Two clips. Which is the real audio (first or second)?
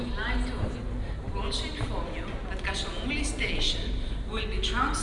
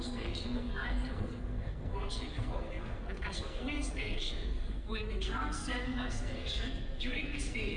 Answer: first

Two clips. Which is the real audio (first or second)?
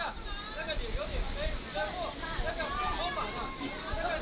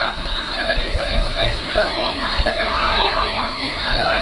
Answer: first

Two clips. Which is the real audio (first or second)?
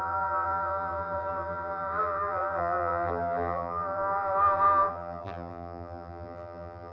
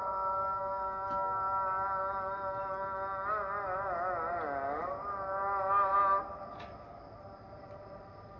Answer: second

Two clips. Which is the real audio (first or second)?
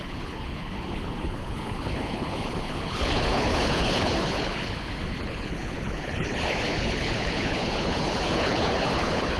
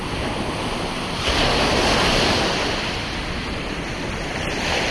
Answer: second